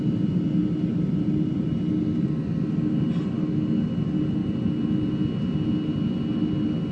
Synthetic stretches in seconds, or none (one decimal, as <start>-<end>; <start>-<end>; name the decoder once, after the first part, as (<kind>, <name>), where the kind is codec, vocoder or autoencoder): 0.9-1.7 (vocoder, BigVGAN v2)